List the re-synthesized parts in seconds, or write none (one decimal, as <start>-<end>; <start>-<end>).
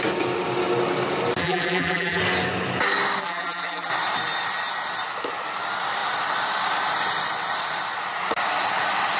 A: 1.4-2.2; 3.2-3.9